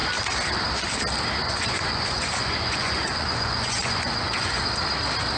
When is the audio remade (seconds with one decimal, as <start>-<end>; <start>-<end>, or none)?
1.4-4.6